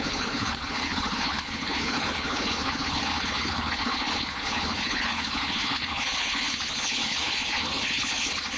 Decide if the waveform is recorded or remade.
remade